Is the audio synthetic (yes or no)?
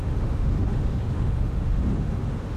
yes